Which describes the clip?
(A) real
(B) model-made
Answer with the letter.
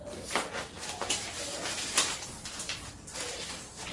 A